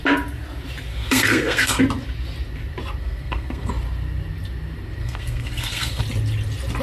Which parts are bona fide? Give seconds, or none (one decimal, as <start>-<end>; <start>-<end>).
0.0-0.9; 1.8-3.0; 3.7-5.0; 6.0-6.8